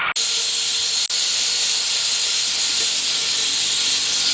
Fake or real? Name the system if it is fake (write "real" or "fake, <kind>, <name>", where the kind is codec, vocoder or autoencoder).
real